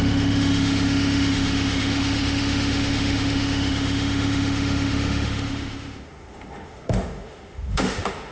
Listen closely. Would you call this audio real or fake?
fake